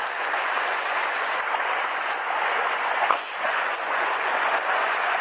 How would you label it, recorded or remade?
remade